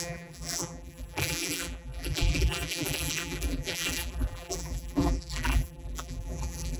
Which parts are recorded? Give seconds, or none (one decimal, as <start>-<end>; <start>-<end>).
none